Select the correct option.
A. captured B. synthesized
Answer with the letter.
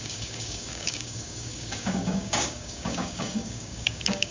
B